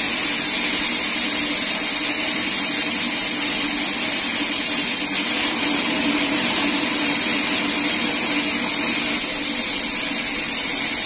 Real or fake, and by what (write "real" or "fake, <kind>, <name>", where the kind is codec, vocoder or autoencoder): real